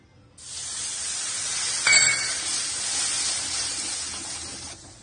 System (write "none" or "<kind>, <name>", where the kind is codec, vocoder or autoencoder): none